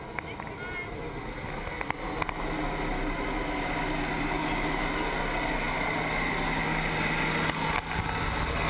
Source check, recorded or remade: recorded